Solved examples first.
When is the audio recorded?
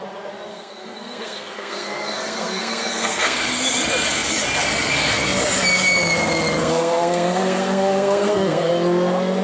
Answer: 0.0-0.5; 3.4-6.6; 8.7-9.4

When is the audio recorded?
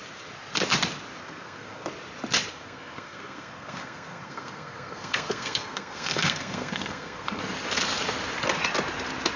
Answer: 0.0-1.2; 1.9-2.5; 7.4-9.4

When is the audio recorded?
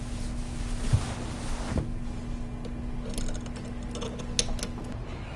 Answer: 0.0-5.4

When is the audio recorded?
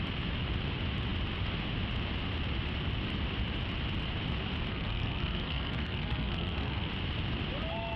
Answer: 0.0-4.7; 6.9-8.0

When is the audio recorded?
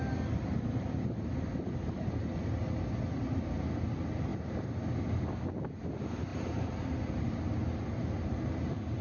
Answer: 0.0-9.0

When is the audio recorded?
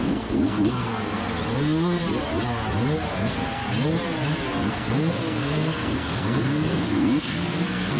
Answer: 1.2-3.1; 3.6-4.7